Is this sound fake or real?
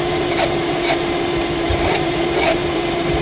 fake